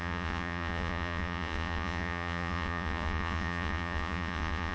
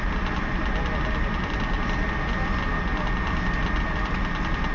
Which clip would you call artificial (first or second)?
first